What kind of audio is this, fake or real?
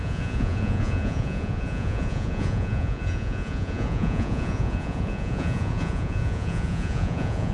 fake